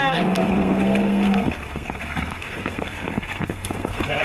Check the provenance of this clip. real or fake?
fake